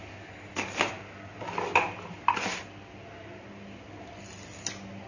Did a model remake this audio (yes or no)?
no